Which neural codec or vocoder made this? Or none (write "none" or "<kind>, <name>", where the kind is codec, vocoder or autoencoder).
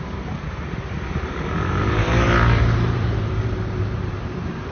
vocoder, BigVGAN v2